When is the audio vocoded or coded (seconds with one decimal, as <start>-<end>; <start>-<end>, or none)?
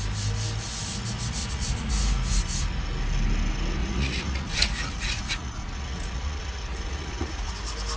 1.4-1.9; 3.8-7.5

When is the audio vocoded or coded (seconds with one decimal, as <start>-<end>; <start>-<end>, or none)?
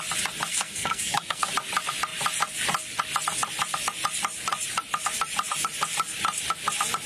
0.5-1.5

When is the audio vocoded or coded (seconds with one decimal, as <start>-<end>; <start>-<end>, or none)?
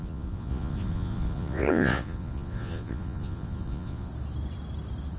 0.0-4.1